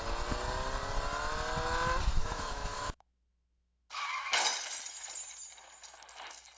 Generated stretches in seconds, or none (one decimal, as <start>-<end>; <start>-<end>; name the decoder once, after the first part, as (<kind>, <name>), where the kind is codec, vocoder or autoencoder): 2.2-3.9 (autoencoder, DAC-VAE)